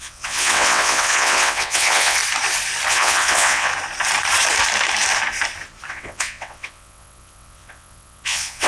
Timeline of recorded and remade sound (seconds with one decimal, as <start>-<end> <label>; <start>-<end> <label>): 0.0-2.2 remade; 2.2-2.9 recorded; 2.9-3.7 remade; 3.7-5.9 recorded; 5.9-8.7 remade